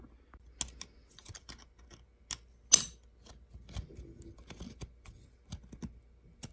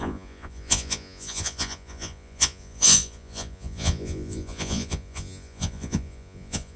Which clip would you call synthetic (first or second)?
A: second